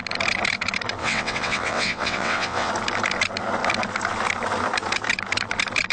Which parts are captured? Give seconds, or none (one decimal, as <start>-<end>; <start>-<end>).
0.0-1.0; 2.7-5.9